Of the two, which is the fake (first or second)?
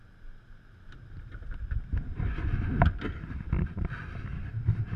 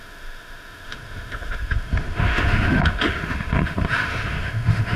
second